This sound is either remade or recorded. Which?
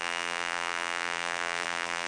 remade